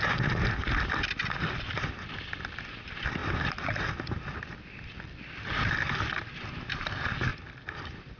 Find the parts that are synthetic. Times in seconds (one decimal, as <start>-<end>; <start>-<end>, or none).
3.2-6.8; 7.3-8.2